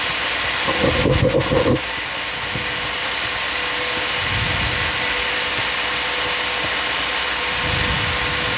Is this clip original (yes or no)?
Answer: yes